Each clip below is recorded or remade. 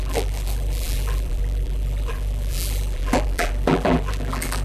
remade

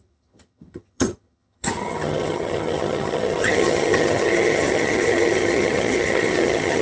remade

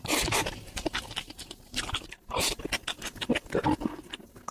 recorded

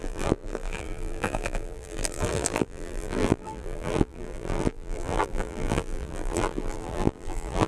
remade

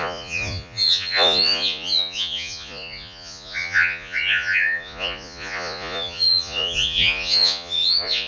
remade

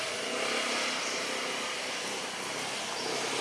recorded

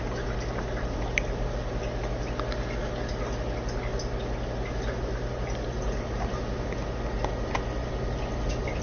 recorded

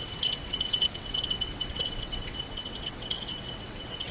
remade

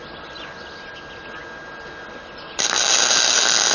recorded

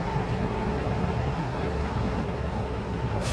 remade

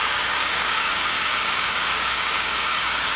remade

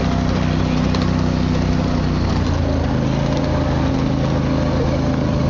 recorded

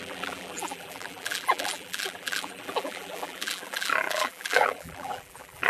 remade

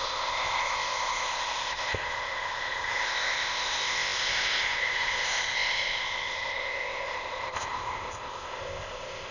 remade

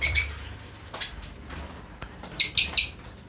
remade